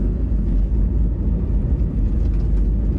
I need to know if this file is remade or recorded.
recorded